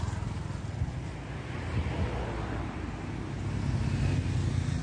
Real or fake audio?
real